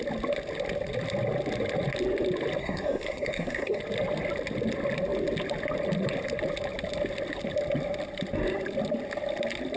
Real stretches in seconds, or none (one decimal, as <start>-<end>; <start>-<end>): 0.0-2.6; 3.8-9.8